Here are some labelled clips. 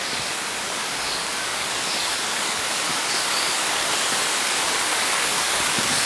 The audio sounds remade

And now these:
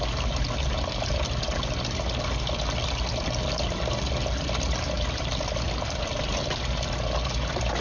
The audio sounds recorded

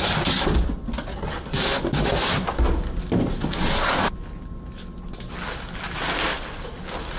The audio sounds recorded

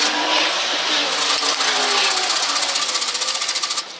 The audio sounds recorded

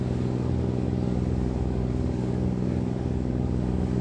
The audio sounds remade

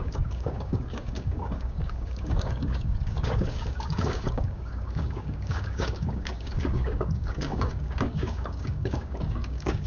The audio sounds remade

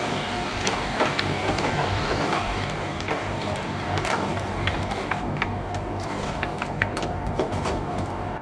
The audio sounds remade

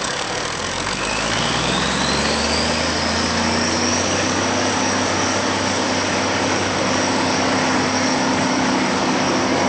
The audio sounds remade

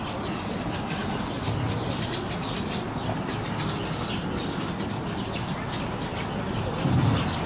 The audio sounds recorded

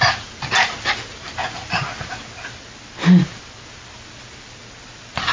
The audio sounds recorded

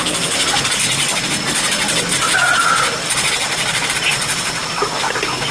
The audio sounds recorded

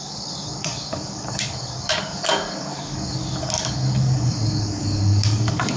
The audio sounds remade